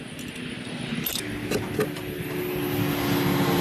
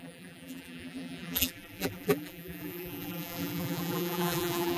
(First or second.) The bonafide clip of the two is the first